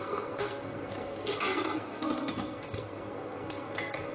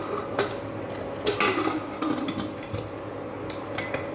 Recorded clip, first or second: second